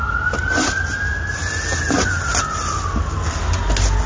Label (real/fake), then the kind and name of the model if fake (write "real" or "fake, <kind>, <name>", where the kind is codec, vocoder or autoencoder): real